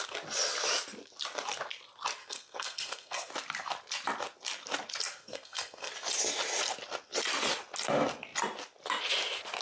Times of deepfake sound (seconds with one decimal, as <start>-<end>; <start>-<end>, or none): 2.2-3.3; 5.2-5.9